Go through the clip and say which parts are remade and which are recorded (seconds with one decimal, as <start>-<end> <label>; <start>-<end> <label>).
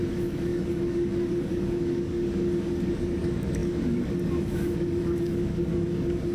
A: 0.0-6.3 remade